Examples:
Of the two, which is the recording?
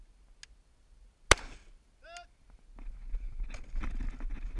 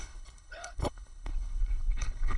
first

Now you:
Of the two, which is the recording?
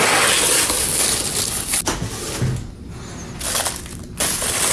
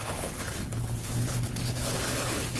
first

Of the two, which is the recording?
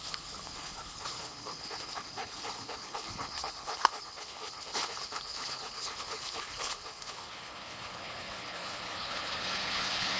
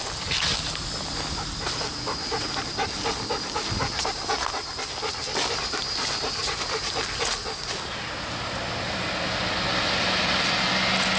second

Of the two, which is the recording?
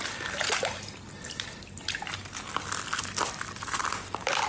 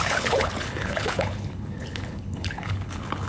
first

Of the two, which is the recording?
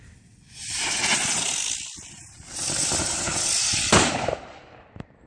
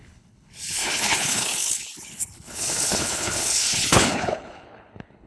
first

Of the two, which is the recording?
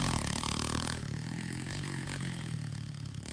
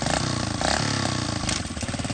second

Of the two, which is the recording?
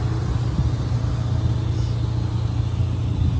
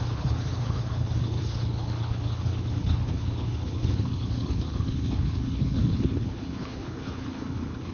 first